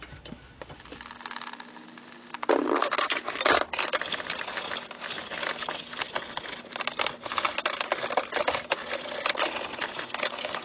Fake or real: real